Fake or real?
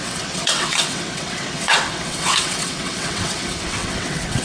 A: fake